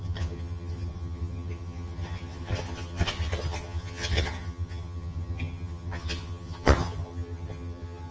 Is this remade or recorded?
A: remade